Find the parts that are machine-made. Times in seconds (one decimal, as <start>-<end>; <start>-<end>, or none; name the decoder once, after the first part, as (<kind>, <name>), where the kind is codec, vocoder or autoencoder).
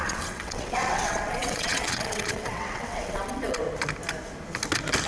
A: 0.0-3.6 (vocoder, WaveNeXt)